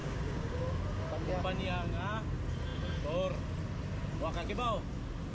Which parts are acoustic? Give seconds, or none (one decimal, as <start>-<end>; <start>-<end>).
0.6-5.3